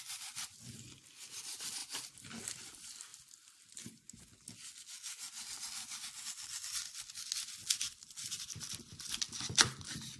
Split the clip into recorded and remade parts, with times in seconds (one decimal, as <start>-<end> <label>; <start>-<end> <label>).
0.0-1.8 recorded; 1.8-2.4 remade; 2.4-10.2 recorded